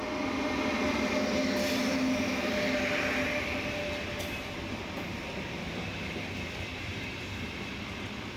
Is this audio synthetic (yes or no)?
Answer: no